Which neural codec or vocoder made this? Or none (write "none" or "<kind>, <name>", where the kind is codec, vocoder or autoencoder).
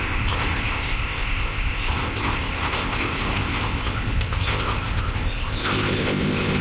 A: codec, ZipCodec